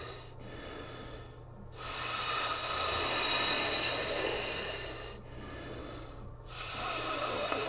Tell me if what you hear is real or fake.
real